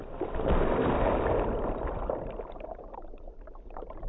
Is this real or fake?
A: real